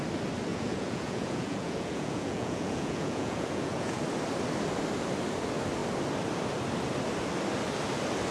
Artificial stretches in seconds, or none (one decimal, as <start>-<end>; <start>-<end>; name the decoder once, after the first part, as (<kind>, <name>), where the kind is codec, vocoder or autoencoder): 0.5-4.0 (vocoder, Vocos)